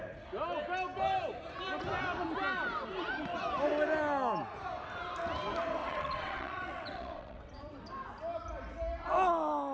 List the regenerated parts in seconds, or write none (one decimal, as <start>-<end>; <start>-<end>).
5.8-7.6